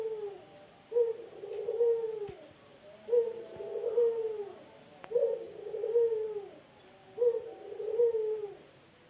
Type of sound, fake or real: real